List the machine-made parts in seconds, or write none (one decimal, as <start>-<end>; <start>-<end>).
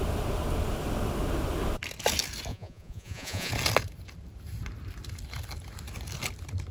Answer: 2.5-3.5